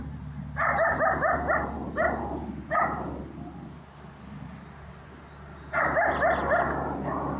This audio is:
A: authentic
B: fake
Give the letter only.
A